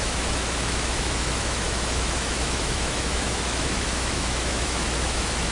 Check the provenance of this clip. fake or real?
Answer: fake